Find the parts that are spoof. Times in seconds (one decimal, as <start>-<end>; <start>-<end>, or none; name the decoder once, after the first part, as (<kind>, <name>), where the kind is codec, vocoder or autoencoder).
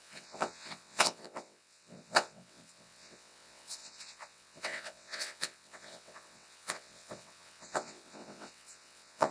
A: 0.0-9.3 (vocoder, WaveNeXt)